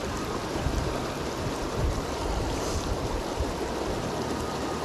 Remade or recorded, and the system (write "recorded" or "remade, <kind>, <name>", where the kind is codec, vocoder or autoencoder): remade, vocoder, BigVGAN v2